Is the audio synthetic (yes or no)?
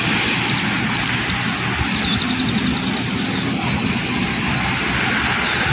no